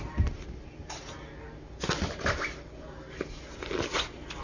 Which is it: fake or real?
real